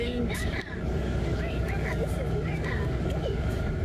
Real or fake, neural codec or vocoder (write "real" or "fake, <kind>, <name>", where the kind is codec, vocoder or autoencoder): fake, codec, DAC